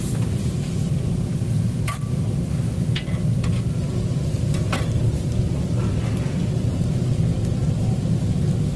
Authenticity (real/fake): real